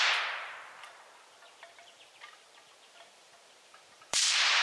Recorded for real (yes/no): no